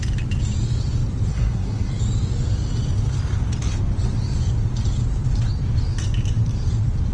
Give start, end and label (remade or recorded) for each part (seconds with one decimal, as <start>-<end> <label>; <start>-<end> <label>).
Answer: 0.0-1.3 recorded; 1.3-1.9 remade; 1.9-7.1 recorded